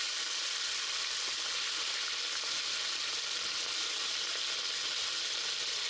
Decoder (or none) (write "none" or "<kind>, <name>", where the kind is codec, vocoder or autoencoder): none